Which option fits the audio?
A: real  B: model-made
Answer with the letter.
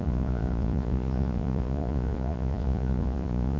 B